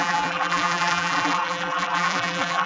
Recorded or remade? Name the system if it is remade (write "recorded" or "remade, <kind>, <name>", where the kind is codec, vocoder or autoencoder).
remade, vocoder, BigVGAN v2